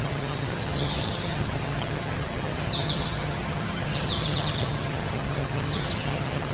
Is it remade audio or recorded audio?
remade